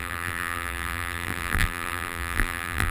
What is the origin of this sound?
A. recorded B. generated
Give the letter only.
B